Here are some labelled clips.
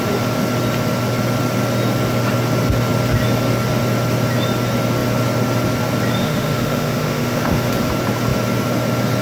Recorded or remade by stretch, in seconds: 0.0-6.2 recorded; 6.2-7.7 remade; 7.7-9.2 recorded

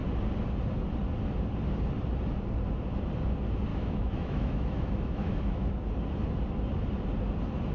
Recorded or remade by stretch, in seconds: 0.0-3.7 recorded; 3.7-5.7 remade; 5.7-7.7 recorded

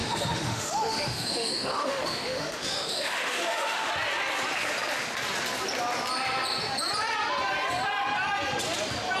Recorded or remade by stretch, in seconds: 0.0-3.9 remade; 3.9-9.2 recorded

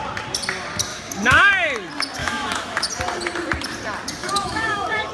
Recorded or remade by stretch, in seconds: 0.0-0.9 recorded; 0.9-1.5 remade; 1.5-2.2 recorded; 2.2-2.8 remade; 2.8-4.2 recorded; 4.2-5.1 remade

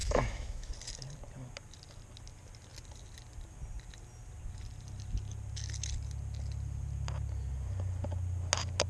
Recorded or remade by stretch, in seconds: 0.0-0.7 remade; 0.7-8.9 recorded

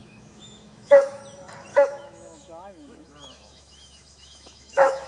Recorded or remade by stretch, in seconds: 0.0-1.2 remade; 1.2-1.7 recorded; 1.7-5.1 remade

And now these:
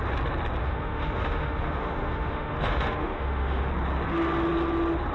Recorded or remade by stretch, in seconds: 0.0-0.6 recorded; 0.6-3.7 remade; 3.7-5.1 recorded

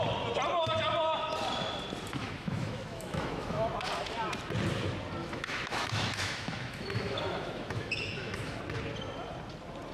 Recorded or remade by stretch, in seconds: 0.0-2.2 recorded; 2.2-3.7 remade; 3.7-5.2 recorded; 5.2-8.6 remade; 8.6-9.9 recorded